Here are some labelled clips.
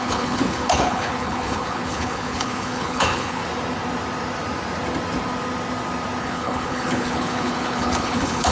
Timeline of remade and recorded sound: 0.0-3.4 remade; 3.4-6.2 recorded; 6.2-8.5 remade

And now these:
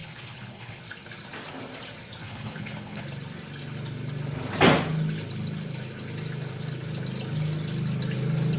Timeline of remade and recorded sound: 0.0-0.8 remade; 0.8-2.2 recorded; 2.2-3.0 remade; 3.0-8.6 recorded